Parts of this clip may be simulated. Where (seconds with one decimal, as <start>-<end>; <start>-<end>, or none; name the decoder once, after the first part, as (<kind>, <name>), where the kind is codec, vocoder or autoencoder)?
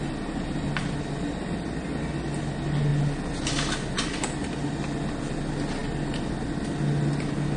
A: none